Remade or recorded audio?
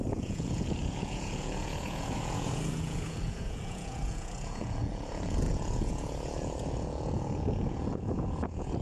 remade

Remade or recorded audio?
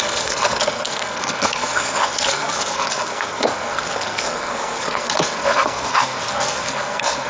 remade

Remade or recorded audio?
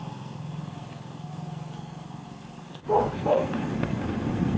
remade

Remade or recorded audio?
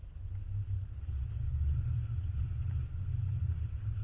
recorded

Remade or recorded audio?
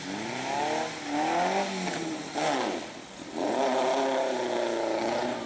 recorded